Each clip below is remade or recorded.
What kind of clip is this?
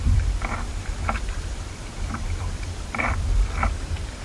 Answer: remade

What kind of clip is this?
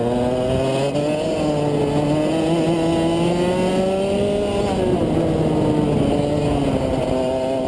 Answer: recorded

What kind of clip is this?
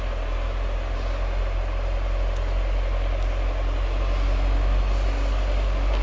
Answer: recorded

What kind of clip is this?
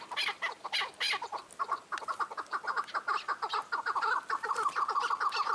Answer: recorded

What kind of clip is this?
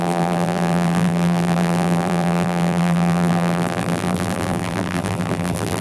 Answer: remade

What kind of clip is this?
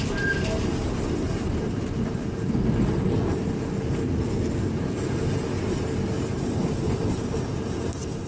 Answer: recorded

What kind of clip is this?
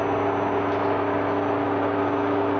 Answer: recorded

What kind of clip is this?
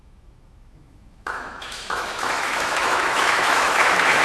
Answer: remade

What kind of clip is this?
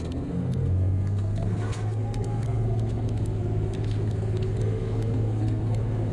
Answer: remade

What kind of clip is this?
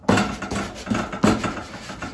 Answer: recorded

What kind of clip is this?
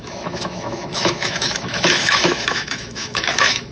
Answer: remade